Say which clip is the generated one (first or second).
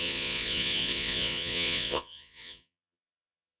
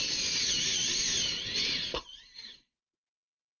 first